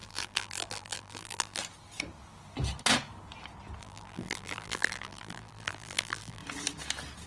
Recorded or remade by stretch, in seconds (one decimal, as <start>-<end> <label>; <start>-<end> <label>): 0.0-1.6 remade; 1.6-3.8 recorded; 3.8-6.4 remade; 6.4-7.3 recorded